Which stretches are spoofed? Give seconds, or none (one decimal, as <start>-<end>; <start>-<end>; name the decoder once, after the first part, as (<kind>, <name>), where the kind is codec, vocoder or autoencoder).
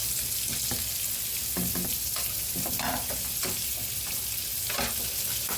none